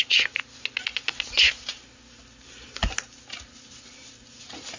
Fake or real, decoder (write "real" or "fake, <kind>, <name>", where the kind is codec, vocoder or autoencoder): real